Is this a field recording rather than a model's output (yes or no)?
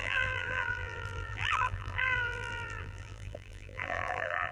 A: no